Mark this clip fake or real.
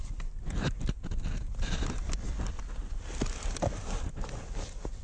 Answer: real